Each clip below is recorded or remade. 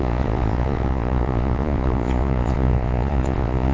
remade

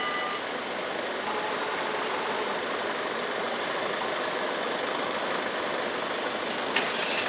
recorded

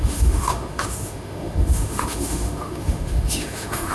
remade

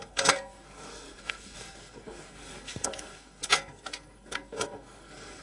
remade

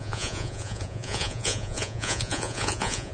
remade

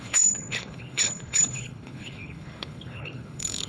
remade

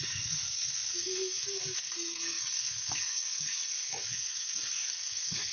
remade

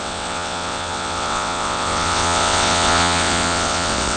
remade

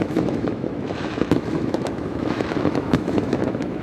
remade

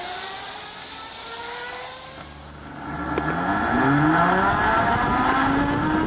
recorded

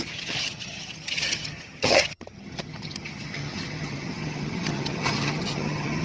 remade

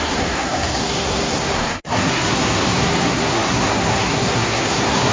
remade